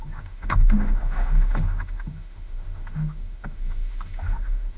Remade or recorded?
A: remade